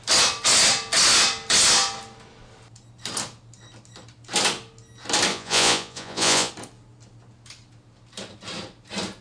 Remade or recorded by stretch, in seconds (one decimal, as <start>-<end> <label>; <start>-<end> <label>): 0.0-5.3 recorded; 5.3-6.5 remade; 6.5-9.2 recorded